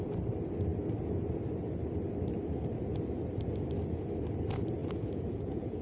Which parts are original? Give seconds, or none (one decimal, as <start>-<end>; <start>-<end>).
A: 0.0-4.8